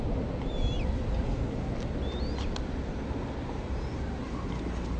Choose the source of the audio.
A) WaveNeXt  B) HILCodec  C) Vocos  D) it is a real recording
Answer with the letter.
D